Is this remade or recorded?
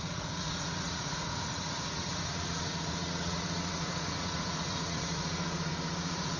remade